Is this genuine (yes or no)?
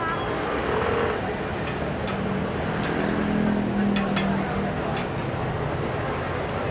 yes